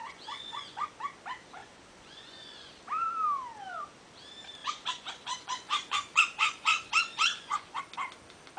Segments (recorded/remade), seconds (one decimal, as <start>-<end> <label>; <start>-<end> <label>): 0.0-0.9 remade; 0.9-1.6 recorded; 1.6-2.7 remade; 2.7-4.6 recorded; 4.6-7.8 remade; 7.8-8.6 recorded